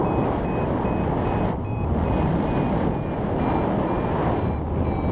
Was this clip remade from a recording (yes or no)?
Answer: no